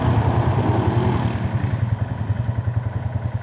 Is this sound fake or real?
real